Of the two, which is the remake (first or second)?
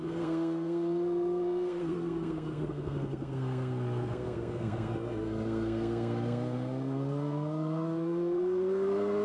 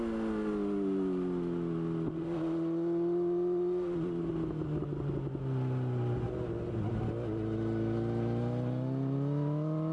first